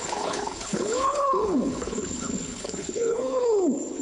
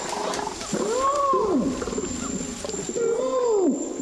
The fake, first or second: first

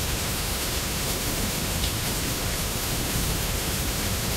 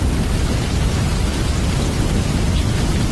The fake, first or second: first